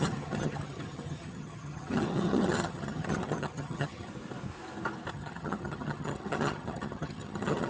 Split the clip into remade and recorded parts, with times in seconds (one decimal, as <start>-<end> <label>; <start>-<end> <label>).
0.0-4.1 remade; 4.1-5.1 recorded; 5.1-7.7 remade